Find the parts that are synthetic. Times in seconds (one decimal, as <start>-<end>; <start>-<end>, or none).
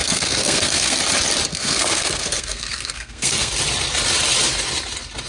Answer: 0.0-1.0; 1.5-3.5